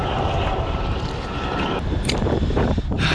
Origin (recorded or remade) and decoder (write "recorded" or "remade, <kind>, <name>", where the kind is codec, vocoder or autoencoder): remade, vocoder, BigVGAN v2